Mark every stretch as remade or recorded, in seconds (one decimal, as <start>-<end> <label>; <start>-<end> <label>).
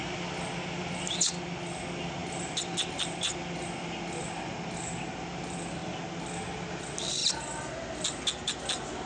0.0-9.1 recorded